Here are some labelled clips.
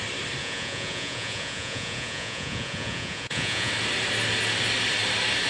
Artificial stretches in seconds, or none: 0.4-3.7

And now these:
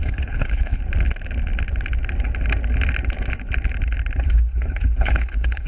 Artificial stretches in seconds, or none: 0.0-0.8; 4.2-5.7

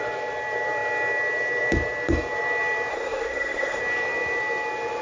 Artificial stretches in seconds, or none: 2.9-3.8

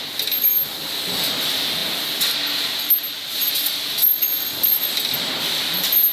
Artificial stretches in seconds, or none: none